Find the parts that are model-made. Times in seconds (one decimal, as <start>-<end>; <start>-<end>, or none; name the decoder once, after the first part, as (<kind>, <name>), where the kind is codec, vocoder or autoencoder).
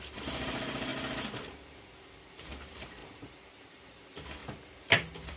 0.0-0.9 (vocoder, BigVGAN v2); 2.3-4.4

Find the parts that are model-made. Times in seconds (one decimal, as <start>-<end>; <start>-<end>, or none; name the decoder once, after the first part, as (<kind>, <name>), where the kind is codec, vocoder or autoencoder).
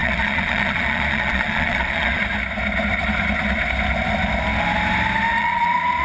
0.0-2.2 (vocoder, Vocos); 5.4-6.0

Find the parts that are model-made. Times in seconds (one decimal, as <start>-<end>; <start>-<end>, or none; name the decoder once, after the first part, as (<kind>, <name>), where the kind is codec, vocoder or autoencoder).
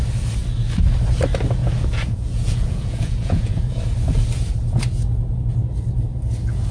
1.6-3.8 (vocoder, Vocos)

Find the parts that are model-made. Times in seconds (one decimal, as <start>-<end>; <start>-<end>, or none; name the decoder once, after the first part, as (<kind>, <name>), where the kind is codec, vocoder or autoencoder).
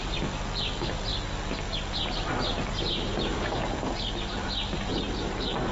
3.3-4.1 (vocoder, BigVGAN v2); 4.9-5.7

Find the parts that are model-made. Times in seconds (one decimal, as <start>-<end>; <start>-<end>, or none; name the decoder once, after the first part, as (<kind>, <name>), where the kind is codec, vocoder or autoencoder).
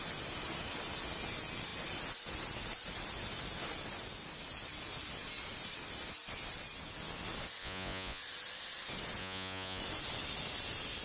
7.6-8.2 (vocoder, Vocos); 9.2-9.8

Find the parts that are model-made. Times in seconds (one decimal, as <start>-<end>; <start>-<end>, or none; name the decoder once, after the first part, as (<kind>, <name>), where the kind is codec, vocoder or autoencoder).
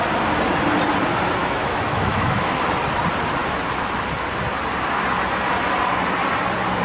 1.4-2.6 (autoencoder, DAC-VAE)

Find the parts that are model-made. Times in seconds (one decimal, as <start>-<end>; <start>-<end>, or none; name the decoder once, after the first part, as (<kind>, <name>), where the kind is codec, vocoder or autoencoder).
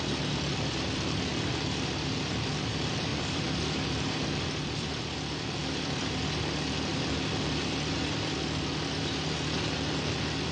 3.1-6.3 (vocoder, BigVGAN v2); 6.9-7.6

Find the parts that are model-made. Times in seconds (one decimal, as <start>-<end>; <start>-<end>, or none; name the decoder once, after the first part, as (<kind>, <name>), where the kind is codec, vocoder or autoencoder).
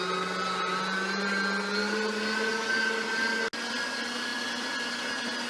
none